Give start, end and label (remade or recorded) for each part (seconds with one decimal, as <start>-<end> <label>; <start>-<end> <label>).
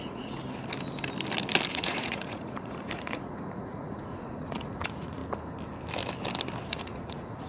0.0-0.4 remade; 0.4-1.7 recorded; 1.7-5.2 remade; 5.2-6.7 recorded; 6.7-7.5 remade